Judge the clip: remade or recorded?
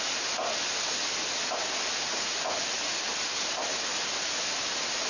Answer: recorded